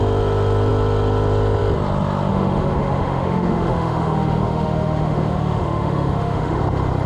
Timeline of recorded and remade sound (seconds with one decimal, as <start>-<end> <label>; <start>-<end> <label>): 0.0-2.3 recorded; 2.3-6.6 remade; 6.6-7.1 recorded